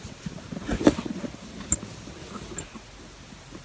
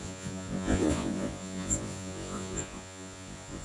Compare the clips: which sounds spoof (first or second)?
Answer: second